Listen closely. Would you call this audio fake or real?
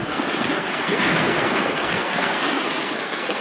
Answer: fake